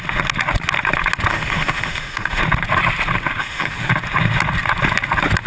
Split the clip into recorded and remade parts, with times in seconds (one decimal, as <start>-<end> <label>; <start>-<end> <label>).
0.0-1.3 recorded; 1.3-2.4 remade; 2.4-3.4 recorded; 3.4-3.9 remade; 3.9-5.5 recorded